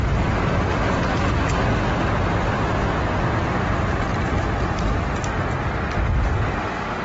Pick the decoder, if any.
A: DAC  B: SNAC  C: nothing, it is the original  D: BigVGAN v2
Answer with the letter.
C